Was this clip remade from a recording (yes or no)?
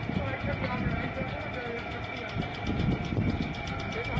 no